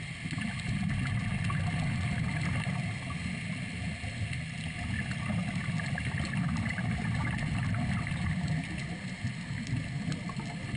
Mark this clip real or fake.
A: real